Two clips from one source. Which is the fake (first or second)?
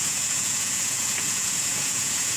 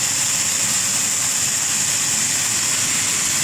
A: first